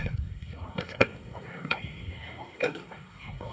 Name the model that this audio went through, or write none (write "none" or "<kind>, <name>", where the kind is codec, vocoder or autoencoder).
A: codec, SNAC